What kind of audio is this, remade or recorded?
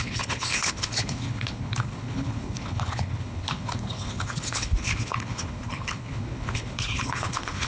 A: remade